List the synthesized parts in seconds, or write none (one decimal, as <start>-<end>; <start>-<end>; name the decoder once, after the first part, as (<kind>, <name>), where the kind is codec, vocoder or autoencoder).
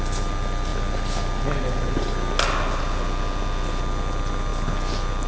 none